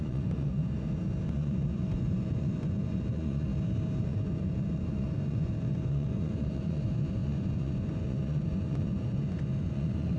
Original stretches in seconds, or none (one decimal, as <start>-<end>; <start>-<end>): 0.6-1.3; 3.5-4.0